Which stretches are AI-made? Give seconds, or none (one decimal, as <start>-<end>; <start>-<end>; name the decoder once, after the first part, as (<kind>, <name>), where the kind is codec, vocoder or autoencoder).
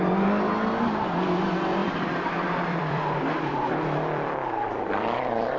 1.8-5.6 (vocoder, BigVGAN v2)